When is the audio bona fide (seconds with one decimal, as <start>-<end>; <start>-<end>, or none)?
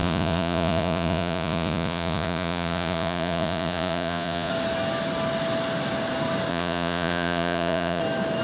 4.5-6.5; 8.0-8.4